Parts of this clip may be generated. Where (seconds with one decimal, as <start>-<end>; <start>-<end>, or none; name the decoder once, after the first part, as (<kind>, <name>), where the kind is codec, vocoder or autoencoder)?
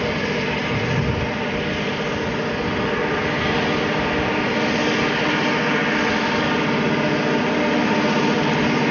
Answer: none